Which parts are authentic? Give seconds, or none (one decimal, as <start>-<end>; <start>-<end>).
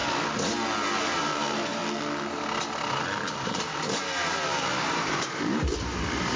0.0-1.0; 1.8-3.4